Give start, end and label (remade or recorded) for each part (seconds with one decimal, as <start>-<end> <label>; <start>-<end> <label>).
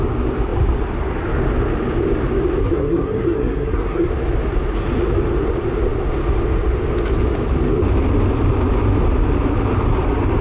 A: 0.0-2.6 recorded; 2.6-4.1 remade; 4.1-10.4 recorded